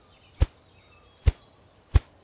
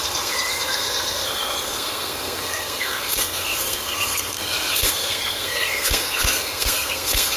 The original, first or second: first